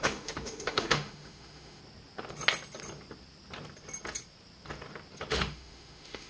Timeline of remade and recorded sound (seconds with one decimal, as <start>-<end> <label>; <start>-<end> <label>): 0.0-1.8 remade; 1.8-5.3 recorded; 5.3-6.3 remade